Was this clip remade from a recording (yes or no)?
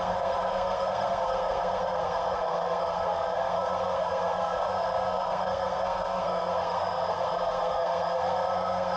yes